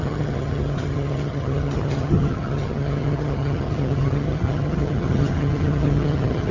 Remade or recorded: remade